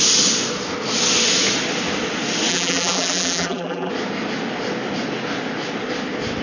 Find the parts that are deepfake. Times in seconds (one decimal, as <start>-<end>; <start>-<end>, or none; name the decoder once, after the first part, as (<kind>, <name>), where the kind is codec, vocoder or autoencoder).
2.5-3.9 (vocoder, BigVGAN v2)